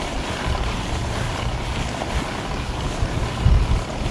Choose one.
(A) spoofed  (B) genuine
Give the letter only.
B